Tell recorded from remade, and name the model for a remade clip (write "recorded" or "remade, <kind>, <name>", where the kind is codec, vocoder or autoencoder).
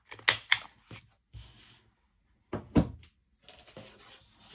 recorded